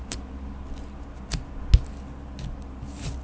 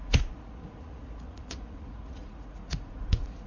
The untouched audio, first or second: first